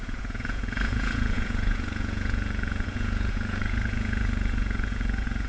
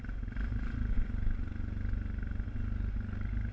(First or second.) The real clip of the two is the second